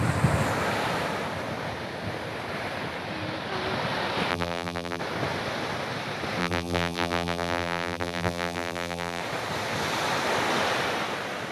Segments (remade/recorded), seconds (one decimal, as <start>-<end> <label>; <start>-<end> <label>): 0.0-4.3 recorded; 4.3-5.0 remade; 5.0-6.4 recorded; 6.4-9.2 remade; 9.2-11.5 recorded

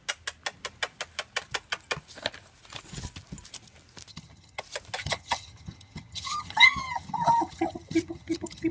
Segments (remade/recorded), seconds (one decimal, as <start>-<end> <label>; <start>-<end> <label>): 0.0-4.1 recorded; 4.1-4.6 remade; 4.6-5.0 recorded; 5.0-8.7 remade